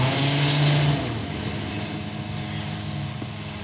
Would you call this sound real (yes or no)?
yes